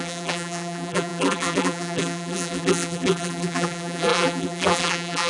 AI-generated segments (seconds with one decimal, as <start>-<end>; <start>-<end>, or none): 0.0-5.3